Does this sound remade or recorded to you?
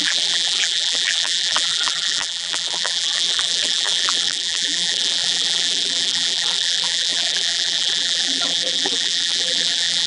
remade